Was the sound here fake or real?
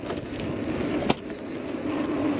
real